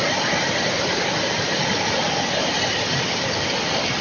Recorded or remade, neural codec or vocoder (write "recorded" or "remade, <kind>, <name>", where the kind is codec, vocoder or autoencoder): recorded